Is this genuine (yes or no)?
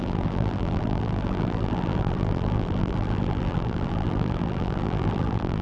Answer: no